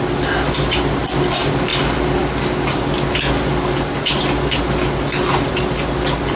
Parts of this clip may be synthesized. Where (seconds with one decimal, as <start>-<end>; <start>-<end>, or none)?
none